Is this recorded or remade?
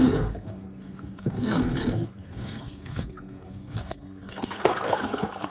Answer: remade